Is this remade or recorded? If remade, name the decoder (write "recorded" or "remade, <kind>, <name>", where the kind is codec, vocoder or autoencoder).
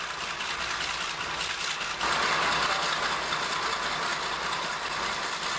recorded